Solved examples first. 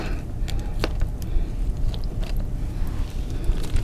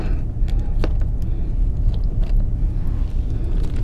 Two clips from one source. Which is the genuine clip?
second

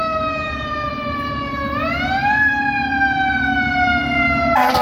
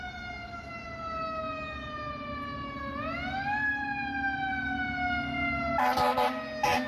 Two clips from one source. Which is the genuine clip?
second